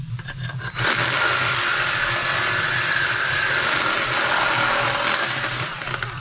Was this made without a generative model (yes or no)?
yes